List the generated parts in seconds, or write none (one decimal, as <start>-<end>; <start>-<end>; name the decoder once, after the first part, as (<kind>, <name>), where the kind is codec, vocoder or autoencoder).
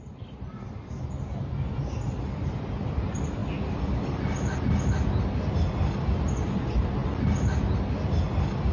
none